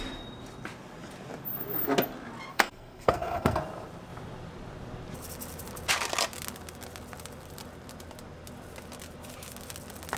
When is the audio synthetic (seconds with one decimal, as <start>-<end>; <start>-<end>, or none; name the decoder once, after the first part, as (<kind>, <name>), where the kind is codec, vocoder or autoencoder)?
2.5-3.6 (codec, SNAC)